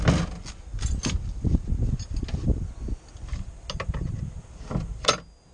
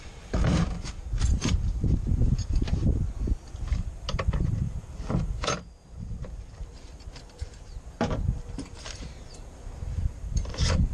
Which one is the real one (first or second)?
first